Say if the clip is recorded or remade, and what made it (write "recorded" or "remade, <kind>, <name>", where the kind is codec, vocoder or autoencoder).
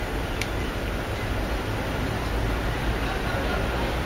recorded